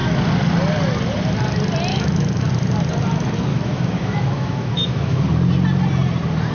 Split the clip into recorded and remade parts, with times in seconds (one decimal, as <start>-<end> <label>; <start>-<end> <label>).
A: 0.0-1.9 recorded; 1.9-2.5 remade; 2.5-3.5 recorded; 3.5-5.2 remade; 5.2-6.5 recorded